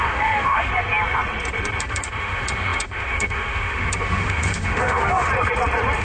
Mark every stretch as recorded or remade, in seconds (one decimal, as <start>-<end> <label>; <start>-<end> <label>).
0.0-0.7 remade; 0.7-1.8 recorded; 1.8-5.3 remade; 5.3-6.0 recorded